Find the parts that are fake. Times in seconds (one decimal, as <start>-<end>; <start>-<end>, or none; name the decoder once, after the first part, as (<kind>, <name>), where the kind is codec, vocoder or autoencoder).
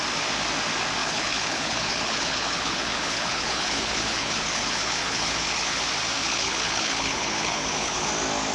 1.0-5.8 (codec, HILCodec); 6.2-8.1